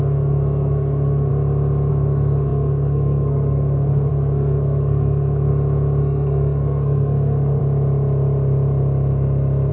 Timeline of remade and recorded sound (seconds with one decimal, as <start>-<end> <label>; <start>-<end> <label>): 0.0-1.3 remade; 1.3-1.9 recorded; 1.9-5.5 remade; 5.5-6.0 recorded; 6.0-7.6 remade; 7.6-9.7 recorded